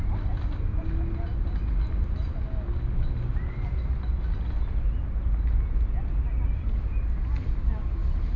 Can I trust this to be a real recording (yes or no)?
yes